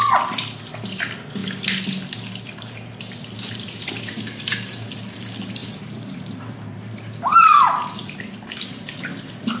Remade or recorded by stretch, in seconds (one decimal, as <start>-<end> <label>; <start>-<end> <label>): 0.0-5.6 recorded; 5.6-6.8 remade; 6.8-9.6 recorded